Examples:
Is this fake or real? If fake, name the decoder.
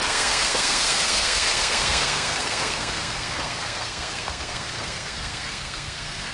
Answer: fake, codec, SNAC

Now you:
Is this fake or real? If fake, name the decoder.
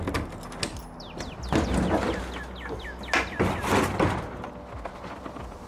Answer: real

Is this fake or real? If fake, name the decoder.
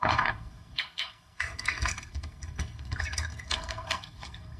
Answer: fake, codec, SNAC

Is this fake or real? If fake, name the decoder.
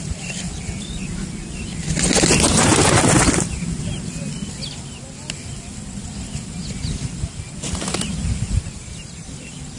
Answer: real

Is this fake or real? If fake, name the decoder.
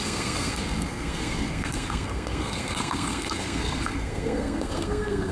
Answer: fake, codec, SNAC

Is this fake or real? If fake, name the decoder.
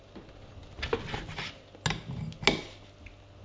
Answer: real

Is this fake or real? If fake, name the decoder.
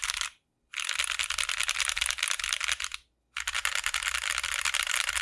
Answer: real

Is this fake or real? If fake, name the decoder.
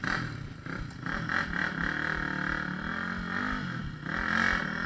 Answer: real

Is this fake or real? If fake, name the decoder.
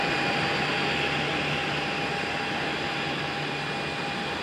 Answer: real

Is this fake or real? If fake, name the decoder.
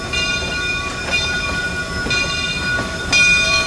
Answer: real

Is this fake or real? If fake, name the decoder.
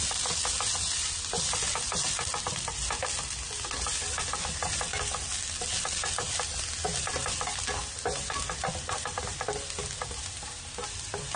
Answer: real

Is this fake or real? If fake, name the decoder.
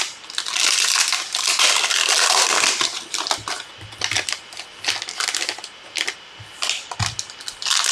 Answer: real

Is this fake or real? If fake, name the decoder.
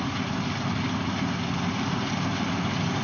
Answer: real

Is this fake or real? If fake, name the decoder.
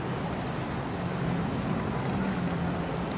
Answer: real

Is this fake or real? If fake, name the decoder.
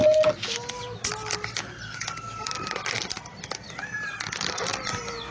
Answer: real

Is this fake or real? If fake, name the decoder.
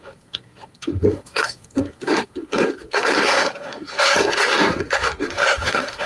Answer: fake, codec, SNAC